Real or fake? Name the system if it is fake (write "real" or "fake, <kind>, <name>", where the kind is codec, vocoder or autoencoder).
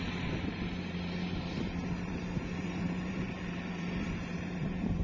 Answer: fake, vocoder, BigVGAN v2